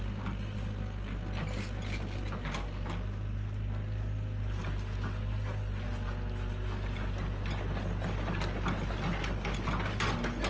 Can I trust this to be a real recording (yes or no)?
yes